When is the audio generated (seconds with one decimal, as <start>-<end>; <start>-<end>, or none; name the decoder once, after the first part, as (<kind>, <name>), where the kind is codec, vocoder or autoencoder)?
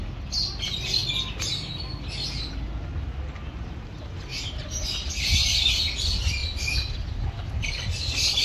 none